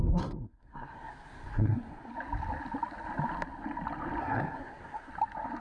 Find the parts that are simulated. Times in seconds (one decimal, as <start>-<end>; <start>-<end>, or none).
0.0-2.1; 4.2-5.1